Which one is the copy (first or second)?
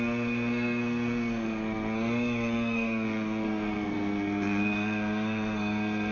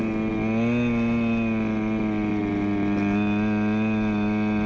first